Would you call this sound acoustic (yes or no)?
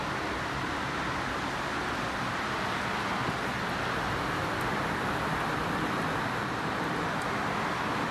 yes